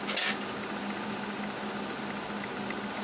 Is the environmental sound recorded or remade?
recorded